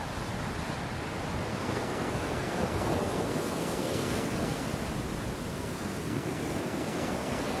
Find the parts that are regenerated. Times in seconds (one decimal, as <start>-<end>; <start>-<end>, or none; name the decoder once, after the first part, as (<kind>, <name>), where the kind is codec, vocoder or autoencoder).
1.5-4.7 (codec, SNAC); 5.5-7.6